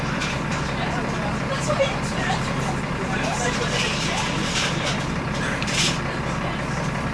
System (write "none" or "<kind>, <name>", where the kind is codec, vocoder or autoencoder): vocoder, BigVGAN v2